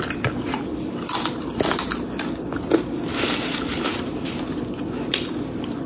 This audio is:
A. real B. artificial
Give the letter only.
A